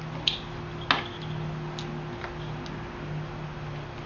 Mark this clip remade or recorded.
recorded